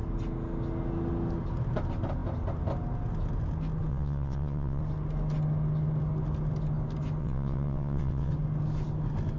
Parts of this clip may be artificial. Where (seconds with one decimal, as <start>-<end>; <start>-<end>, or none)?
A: 3.9-4.8; 7.2-8.3